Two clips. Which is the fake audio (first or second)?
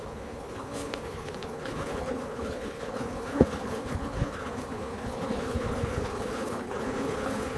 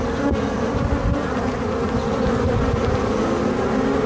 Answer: first